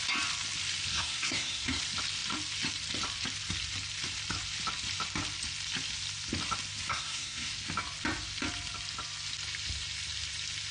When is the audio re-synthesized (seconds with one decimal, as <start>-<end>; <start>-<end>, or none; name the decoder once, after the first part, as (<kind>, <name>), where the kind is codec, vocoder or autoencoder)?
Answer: 0.9-1.8 (codec, SNAC); 6.9-7.5